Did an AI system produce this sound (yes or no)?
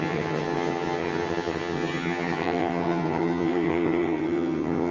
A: yes